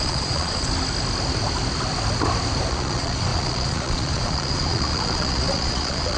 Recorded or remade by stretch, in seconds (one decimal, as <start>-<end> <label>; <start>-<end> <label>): 0.0-0.7 remade; 0.7-2.7 recorded; 2.7-6.2 remade

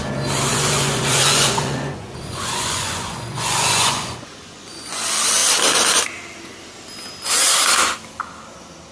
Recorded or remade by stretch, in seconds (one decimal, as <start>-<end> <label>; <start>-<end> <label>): 0.0-0.5 recorded; 0.5-5.0 remade; 5.0-8.9 recorded

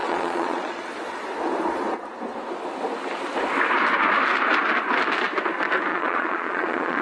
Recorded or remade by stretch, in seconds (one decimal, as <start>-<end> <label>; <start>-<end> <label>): 0.0-0.9 remade; 0.9-5.9 recorded; 5.9-7.0 remade